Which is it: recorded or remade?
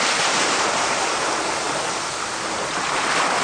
recorded